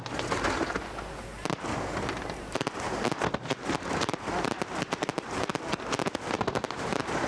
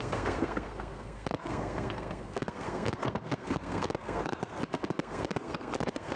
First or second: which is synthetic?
second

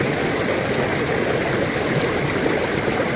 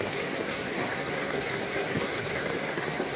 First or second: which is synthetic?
second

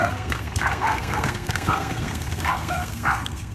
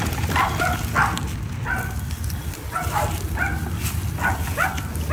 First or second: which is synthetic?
first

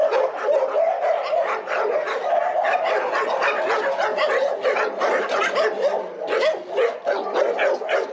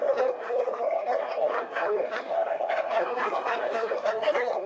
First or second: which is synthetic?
second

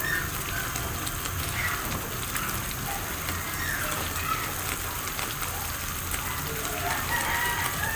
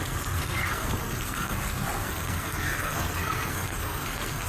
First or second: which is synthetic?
second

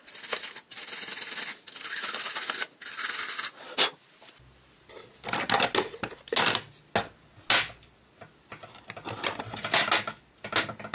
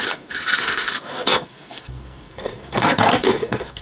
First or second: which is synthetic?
second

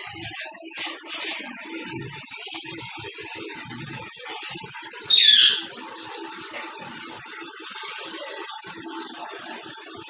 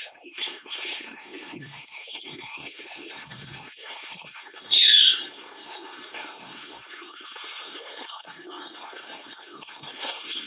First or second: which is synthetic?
second